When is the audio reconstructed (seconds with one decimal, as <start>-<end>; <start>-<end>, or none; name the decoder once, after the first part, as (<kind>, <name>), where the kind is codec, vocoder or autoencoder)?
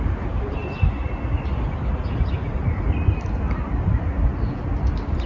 none